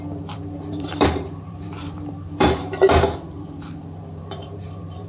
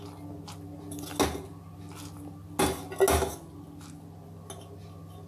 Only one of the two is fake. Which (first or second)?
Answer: first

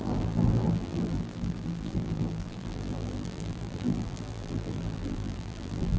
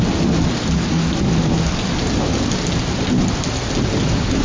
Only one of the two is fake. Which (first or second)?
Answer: first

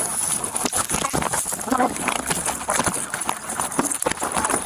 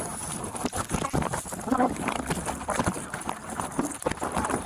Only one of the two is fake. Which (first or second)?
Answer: second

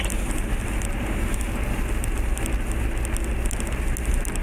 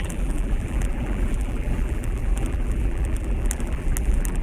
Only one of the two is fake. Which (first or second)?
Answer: second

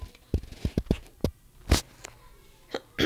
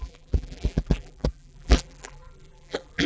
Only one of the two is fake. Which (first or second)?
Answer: second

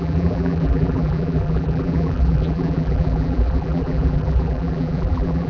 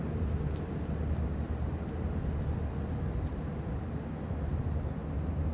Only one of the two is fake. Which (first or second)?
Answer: first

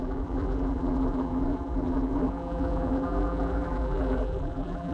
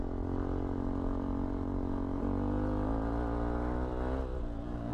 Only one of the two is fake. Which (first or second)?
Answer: first